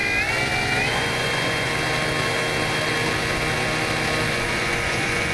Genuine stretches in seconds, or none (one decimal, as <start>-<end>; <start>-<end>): 0.0-0.9; 1.7-4.3

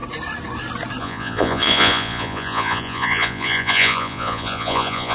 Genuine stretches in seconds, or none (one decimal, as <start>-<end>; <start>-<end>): 0.0-1.0

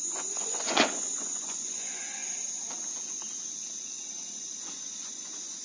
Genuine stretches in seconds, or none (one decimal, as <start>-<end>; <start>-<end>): 2.2-4.3